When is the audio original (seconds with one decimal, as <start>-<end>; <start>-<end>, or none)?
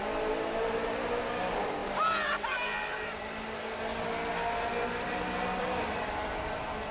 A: 0.0-6.9